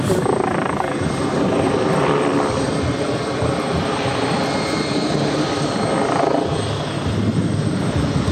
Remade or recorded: remade